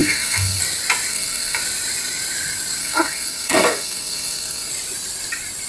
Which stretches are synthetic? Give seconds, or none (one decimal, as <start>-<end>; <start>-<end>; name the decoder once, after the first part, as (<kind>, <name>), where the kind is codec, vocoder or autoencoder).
0.0-0.6 (codec, SNAC); 1.1-1.6; 2.8-4.7